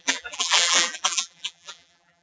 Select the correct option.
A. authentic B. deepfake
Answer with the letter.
B